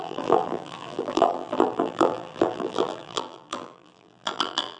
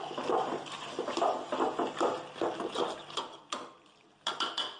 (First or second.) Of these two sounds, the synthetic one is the first